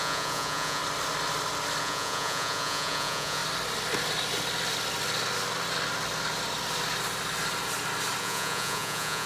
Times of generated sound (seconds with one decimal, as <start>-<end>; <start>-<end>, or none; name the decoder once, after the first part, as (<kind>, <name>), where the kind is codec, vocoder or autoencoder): 0.0-0.8 (vocoder, Vocos); 1.8-3.4; 8.2-9.3